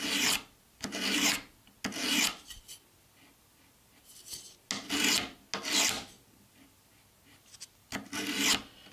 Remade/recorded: recorded